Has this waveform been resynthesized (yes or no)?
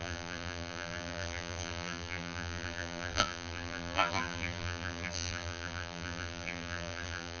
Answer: yes